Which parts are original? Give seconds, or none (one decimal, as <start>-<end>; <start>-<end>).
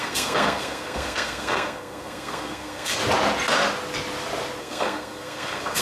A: 3.0-4.6